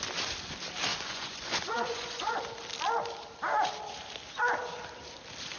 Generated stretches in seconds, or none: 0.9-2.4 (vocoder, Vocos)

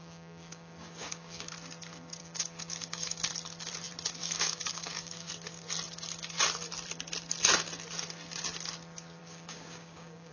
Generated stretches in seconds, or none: 0.0-1.5 (codec, DAC); 2.2-3.3; 4.2-5.3; 9.2-10.3

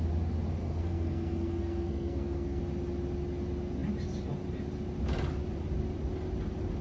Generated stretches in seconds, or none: 0.6-2.6 (codec, SNAC)

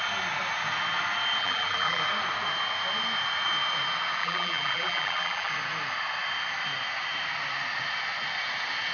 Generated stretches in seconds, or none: 1.4-2.0 (vocoder, BigVGAN v2); 4.2-5.5

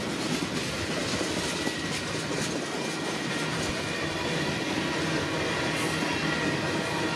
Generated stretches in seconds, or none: none

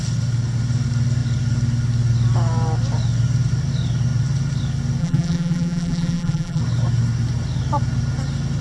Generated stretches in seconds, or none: 5.0-6.6 (vocoder, BigVGAN v2)